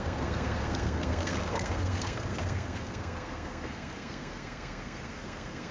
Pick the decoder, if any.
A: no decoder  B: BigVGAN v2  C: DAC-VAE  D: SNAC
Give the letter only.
D